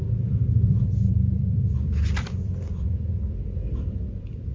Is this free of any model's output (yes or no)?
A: no